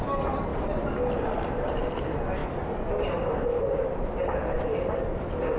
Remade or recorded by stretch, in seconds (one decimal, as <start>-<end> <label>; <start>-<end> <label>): 0.0-5.6 recorded

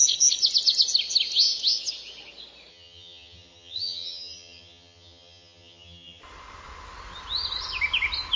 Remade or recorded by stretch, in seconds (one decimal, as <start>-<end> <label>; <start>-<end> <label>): 0.0-2.7 recorded; 2.7-6.2 remade; 6.2-8.4 recorded

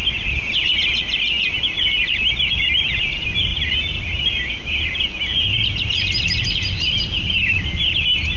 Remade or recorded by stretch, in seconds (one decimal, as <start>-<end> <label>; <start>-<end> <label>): 0.0-8.4 recorded

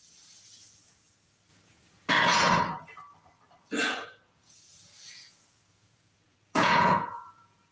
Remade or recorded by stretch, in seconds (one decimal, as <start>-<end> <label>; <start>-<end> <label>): 0.0-1.5 recorded; 1.5-2.1 remade; 2.1-3.8 recorded; 3.8-7.7 remade

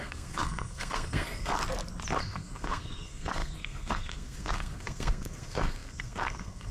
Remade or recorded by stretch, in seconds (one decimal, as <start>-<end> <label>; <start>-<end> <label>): 0.0-1.6 remade; 1.6-2.2 recorded; 2.2-6.7 remade

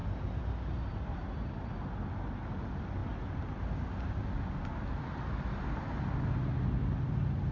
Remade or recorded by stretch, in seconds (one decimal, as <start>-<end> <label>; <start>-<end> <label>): 0.0-7.5 recorded